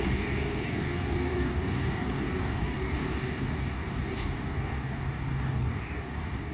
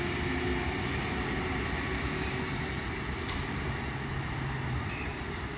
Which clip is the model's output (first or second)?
first